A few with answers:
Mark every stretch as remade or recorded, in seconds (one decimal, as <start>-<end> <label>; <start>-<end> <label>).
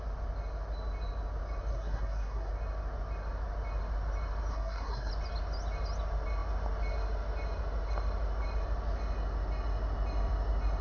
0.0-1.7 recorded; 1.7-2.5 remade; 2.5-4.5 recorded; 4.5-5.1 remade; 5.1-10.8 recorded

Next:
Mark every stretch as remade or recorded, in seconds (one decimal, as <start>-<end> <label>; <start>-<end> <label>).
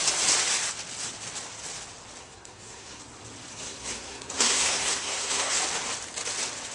0.0-2.2 recorded; 2.2-3.0 remade; 3.0-3.5 recorded; 3.5-5.6 remade; 5.6-6.7 recorded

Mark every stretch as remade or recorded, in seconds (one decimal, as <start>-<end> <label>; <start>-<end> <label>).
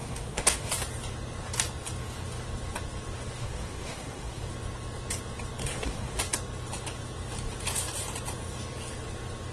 0.0-0.7 remade; 0.7-3.4 recorded; 3.4-4.5 remade; 4.5-5.6 recorded; 5.6-6.2 remade; 6.2-9.5 recorded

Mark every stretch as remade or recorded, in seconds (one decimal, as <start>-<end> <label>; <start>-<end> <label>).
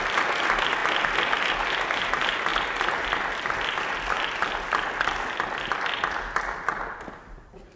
0.0-7.8 recorded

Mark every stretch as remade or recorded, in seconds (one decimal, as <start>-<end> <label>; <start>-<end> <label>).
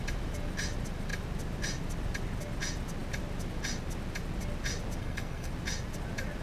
0.0-5.0 recorded; 5.0-5.5 remade; 5.5-6.4 recorded